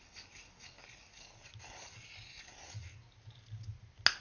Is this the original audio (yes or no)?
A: yes